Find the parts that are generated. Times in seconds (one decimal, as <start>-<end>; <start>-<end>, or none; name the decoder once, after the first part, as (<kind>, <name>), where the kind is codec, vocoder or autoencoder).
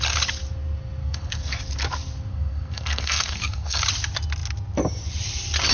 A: 1.0-1.6 (codec, SNAC); 2.3-3.8